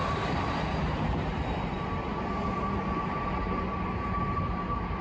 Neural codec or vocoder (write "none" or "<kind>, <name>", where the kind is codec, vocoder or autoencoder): none